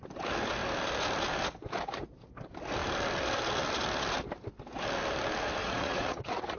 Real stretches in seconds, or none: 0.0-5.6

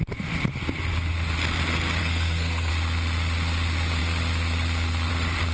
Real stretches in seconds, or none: 0.0-2.0; 2.7-5.5

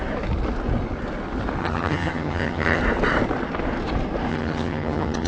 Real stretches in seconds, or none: 0.0-1.6; 2.8-4.3

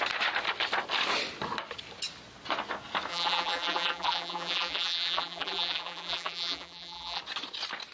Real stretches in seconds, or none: 0.0-3.1; 7.2-7.9

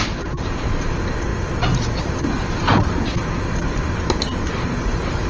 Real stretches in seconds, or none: 0.0-5.3

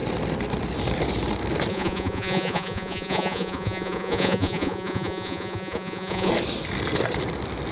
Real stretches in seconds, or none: 0.0-1.7; 6.3-7.7

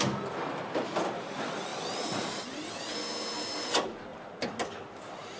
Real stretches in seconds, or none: 0.0-1.7; 2.7-4.1; 5.0-5.4

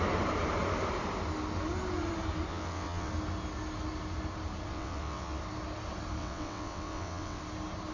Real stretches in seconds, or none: 0.0-2.5; 3.1-4.7; 5.4-6.2; 7.4-7.9